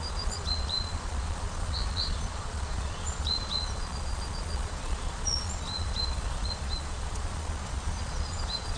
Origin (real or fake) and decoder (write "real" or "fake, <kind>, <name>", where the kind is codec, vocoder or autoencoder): fake, vocoder, Vocos